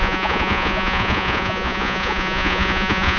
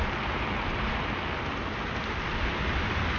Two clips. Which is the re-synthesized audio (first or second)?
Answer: first